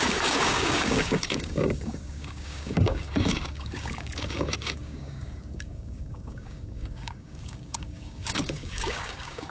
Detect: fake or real fake